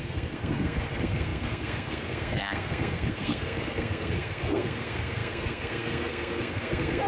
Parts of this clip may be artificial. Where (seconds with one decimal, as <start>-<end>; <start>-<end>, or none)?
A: 0.0-7.1